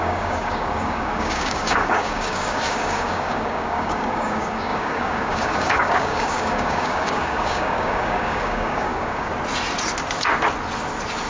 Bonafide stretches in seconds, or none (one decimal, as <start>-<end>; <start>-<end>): 9.3-11.3